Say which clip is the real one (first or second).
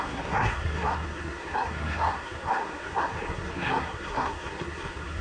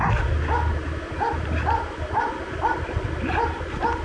second